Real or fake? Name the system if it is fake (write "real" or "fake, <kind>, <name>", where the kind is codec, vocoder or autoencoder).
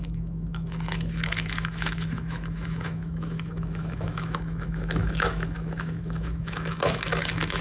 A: fake, autoencoder, DAC-VAE